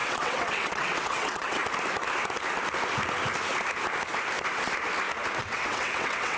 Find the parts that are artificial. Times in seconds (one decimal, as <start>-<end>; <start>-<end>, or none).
0.0-1.6; 5.4-6.4